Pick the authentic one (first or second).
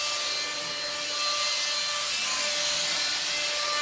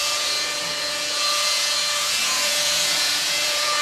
first